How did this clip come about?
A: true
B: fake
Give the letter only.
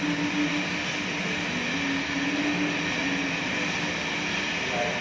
A